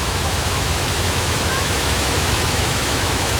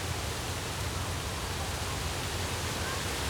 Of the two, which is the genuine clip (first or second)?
second